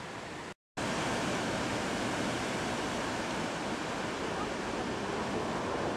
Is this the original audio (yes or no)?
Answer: yes